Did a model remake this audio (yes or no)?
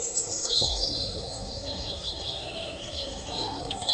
yes